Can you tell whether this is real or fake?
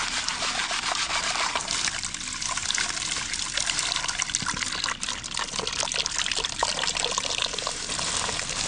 real